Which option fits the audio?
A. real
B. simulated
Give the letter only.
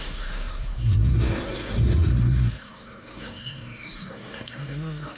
B